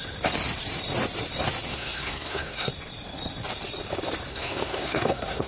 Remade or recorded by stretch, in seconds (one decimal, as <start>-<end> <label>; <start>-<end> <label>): 0.0-1.7 recorded; 1.7-2.7 remade; 2.7-4.3 recorded; 4.3-5.5 remade